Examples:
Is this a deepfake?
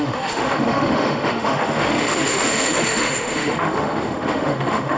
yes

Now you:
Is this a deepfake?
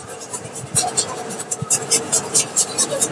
no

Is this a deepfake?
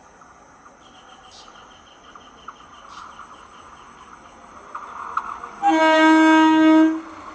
no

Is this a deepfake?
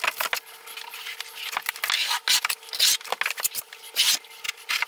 no